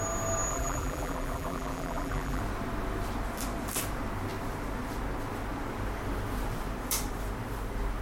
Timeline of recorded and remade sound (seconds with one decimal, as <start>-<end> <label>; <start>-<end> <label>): 0.0-0.5 recorded; 0.5-2.4 remade; 2.4-8.0 recorded